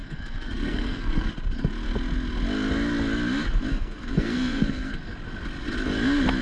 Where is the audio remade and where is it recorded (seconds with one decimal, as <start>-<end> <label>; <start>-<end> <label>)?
0.0-1.3 remade; 1.3-3.7 recorded; 3.7-5.0 remade; 5.0-6.4 recorded